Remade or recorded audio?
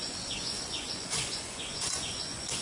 remade